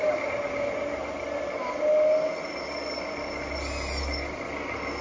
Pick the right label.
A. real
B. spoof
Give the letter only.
A